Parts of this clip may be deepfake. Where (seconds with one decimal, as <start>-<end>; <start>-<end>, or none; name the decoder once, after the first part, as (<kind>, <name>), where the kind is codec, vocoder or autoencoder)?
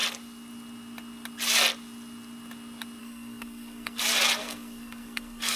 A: 3.0-4.0 (codec, SNAC); 4.4-5.6